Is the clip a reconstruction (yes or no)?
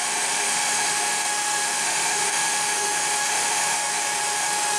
yes